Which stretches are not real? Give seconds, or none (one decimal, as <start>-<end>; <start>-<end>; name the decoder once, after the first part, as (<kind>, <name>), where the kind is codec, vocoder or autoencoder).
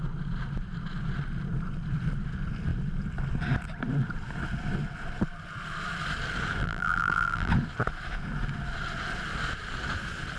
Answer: 6.6-7.5 (vocoder, BigVGAN v2)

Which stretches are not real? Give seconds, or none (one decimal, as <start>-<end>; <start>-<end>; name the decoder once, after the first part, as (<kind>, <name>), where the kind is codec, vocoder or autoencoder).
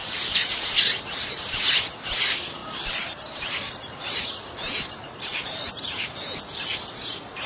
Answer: 0.0-0.7 (vocoder, BigVGAN v2); 2.6-4.2; 5.3-6.2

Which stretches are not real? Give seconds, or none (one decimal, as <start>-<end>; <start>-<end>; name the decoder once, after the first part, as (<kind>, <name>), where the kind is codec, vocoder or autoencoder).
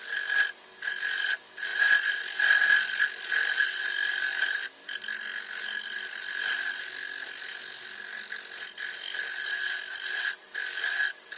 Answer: none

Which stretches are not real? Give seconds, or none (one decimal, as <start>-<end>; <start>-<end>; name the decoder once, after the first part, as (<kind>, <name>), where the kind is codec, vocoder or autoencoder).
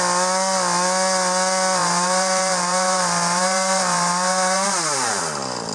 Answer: 1.8-5.2 (vocoder, BigVGAN v2)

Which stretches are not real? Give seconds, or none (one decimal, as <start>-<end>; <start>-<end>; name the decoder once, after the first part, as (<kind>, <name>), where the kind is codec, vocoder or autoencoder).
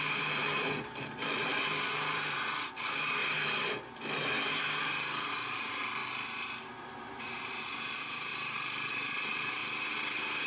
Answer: 0.0-3.2 (vocoder, BigVGAN v2); 4.8-6.0; 6.7-9.6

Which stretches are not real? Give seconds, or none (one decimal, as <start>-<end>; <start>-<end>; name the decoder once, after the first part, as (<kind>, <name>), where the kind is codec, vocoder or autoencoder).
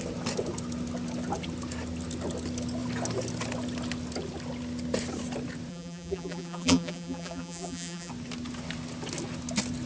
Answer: 5.7-8.1 (vocoder, BigVGAN v2)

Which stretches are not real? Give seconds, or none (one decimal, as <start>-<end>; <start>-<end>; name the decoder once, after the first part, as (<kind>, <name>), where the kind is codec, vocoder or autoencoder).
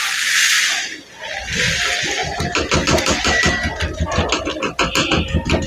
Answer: 0.5-1.1 (vocoder, BigVGAN v2); 2.2-3.1